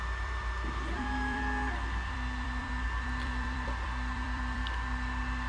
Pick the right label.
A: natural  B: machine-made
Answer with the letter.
B